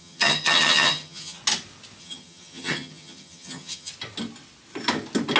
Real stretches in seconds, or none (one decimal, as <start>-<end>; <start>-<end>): 1.4-2.0; 3.9-5.4